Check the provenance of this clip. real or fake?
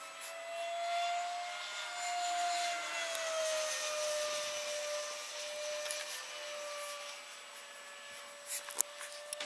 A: real